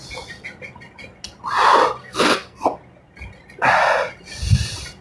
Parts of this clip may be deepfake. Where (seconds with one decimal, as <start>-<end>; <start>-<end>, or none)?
2.0-2.6